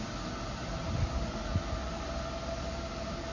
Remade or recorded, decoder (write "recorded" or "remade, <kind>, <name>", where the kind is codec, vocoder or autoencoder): recorded